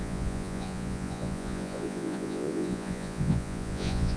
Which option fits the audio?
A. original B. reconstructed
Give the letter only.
B